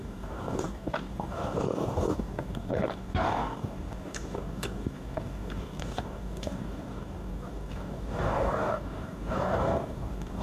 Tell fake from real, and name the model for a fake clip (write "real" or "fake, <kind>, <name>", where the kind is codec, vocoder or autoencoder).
fake, codec, DAC